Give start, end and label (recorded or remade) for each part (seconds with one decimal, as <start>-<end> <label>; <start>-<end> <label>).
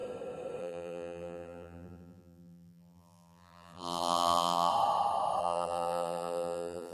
0.0-0.6 recorded; 0.6-4.7 remade; 4.7-5.4 recorded; 5.4-6.9 remade